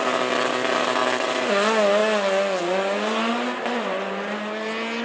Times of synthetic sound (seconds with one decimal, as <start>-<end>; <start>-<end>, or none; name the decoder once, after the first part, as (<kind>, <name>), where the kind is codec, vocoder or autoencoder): none